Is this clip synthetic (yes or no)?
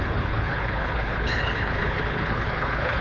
yes